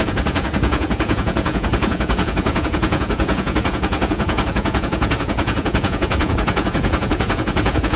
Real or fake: fake